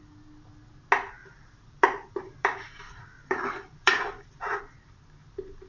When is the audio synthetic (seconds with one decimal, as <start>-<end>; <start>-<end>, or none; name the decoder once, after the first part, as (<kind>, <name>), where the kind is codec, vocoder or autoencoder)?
1.2-4.6 (vocoder, BigVGAN v2)